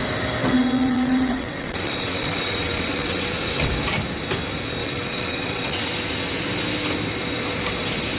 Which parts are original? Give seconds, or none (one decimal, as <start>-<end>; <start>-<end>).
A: 0.0-0.4; 3.7-4.8; 5.9-8.2